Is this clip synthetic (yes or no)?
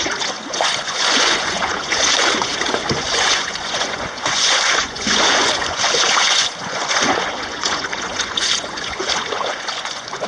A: yes